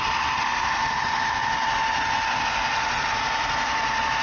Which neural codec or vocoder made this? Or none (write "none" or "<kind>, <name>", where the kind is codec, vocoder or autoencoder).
none